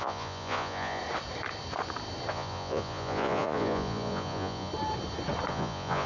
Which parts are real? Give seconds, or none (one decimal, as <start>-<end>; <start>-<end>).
1.0-2.3; 4.7-5.5